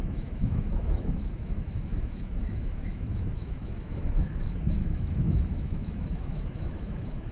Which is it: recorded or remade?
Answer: remade